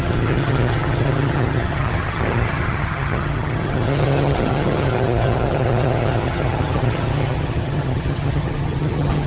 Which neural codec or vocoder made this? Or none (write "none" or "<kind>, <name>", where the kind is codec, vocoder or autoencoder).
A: vocoder, HiFi-GAN